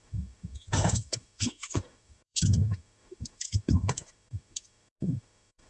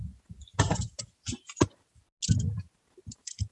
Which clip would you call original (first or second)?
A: second